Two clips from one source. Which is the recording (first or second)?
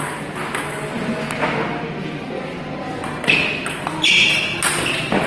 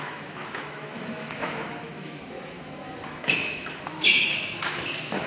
first